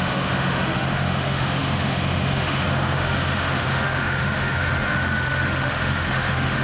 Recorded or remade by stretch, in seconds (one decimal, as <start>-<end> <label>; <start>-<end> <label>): 0.0-6.6 remade